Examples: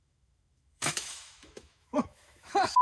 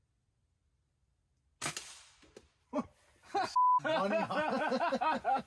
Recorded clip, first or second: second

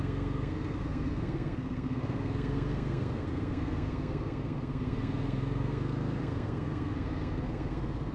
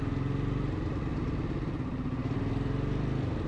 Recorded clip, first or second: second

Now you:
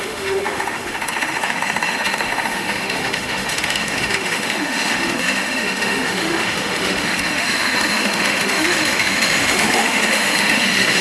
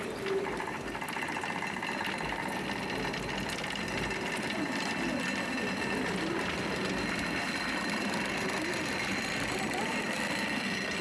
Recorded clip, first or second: second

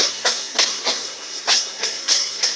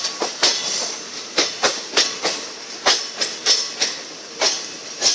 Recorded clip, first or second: second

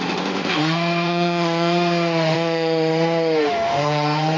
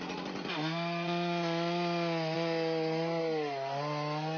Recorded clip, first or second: second